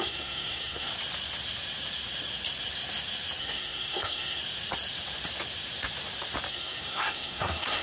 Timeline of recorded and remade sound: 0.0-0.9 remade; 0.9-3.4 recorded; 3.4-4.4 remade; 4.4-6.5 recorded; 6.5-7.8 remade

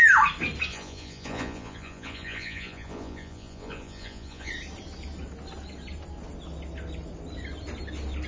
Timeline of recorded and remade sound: 0.0-0.7 recorded; 0.7-4.5 remade; 4.5-8.3 recorded